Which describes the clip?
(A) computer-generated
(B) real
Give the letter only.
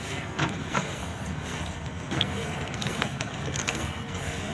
A